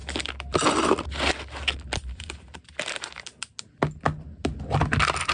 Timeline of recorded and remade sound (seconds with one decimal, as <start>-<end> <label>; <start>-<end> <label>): 0.0-5.3 recorded